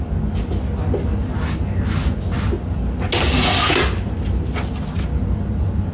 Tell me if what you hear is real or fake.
real